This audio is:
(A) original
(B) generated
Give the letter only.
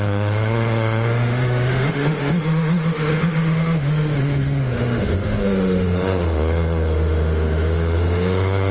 B